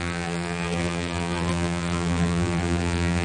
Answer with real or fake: fake